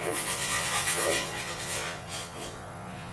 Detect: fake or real fake